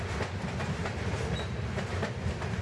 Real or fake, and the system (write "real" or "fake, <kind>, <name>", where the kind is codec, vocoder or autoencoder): real